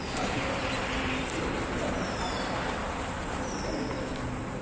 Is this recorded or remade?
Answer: recorded